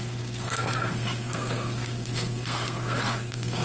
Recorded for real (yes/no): no